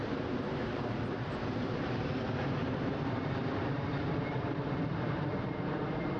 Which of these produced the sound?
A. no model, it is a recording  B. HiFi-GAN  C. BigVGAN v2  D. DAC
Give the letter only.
C